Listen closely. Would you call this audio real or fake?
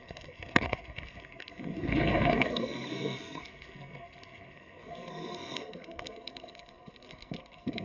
fake